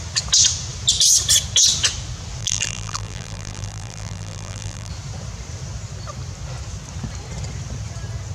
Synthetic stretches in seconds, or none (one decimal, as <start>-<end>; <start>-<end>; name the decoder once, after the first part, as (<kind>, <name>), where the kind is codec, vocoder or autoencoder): 2.4-4.9 (vocoder, BigVGAN v2)